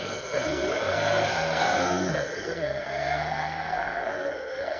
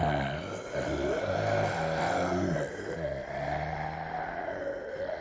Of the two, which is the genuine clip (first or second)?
second